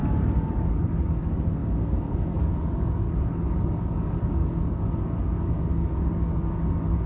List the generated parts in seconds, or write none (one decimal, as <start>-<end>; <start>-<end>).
0.7-7.1